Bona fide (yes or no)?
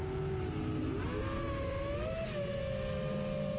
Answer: yes